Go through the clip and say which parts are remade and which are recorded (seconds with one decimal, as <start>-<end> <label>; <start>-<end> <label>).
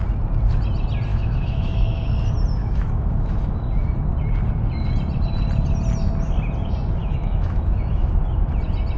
0.0-1.1 recorded; 1.1-2.1 remade; 2.1-2.6 recorded; 2.6-3.6 remade; 3.6-7.0 recorded; 7.0-8.1 remade; 8.1-9.0 recorded